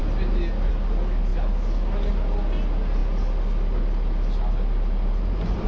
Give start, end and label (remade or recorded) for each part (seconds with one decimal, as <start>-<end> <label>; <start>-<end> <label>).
0.0-5.7 recorded